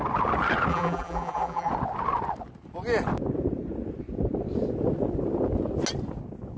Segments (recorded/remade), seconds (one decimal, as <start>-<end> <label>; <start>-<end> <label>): 0.0-0.7 recorded; 0.7-1.7 remade; 1.7-6.6 recorded